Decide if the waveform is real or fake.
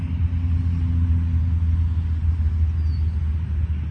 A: real